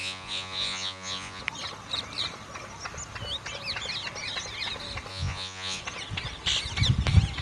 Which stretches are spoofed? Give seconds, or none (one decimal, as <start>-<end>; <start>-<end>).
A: 0.0-1.4; 5.1-5.8